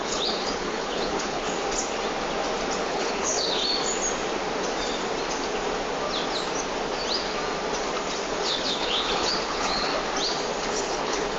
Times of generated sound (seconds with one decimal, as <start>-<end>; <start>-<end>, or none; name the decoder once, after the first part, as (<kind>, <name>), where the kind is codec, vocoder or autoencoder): 0.0-1.5 (codec, HILCodec); 2.8-3.6; 8.3-9.9; 10.6-11.4